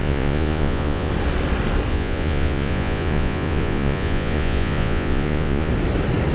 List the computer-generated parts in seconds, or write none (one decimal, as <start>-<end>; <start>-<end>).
0.0-1.1; 1.9-5.7